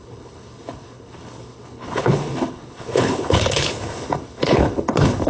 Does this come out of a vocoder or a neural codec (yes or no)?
yes